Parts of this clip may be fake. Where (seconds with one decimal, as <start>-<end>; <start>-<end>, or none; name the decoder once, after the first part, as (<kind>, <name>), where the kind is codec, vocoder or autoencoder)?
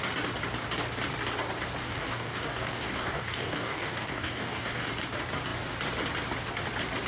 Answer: 1.8-4.9 (codec, DAC)